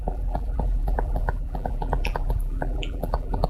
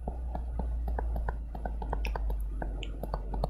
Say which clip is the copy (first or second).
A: first